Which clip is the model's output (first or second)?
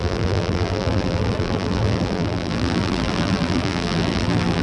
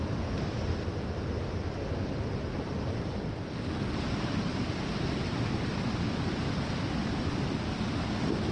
first